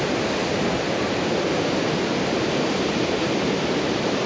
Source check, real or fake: fake